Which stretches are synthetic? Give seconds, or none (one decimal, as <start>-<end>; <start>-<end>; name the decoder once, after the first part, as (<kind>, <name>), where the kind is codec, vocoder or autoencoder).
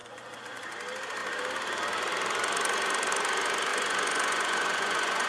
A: 0.0-0.6 (vocoder, Vocos); 3.7-5.3